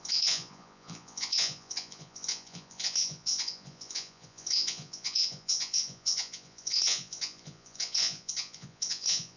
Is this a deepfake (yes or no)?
yes